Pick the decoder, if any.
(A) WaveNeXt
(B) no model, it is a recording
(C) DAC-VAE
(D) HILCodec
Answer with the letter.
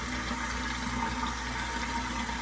B